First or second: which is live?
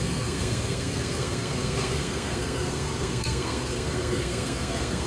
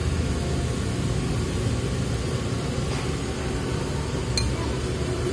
second